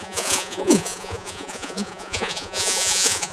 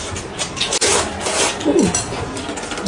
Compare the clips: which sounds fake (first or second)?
first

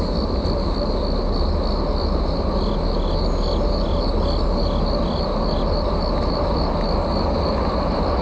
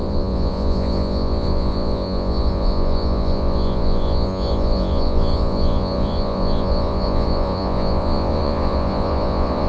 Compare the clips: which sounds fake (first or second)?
second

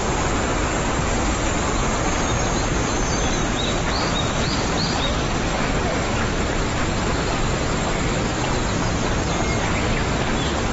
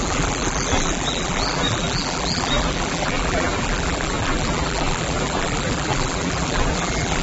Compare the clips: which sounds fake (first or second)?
second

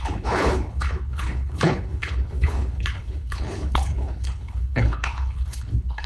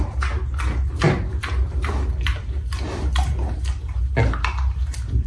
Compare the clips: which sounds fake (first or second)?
first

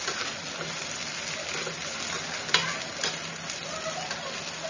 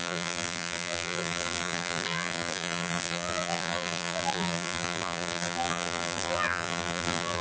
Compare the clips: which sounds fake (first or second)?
second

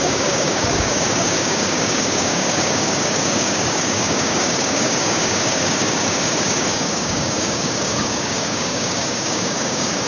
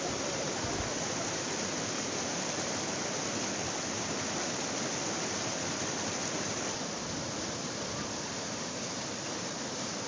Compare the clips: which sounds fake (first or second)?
first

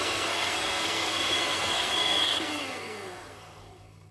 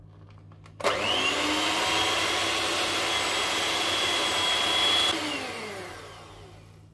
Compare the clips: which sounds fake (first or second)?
first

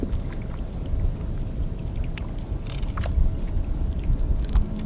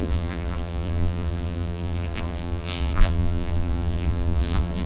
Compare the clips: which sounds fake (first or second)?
second